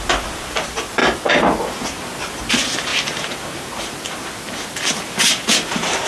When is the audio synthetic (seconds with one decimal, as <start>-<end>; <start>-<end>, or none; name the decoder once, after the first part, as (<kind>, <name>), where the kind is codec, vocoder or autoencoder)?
0.0-1.0 (vocoder, BigVGAN v2); 1.6-6.1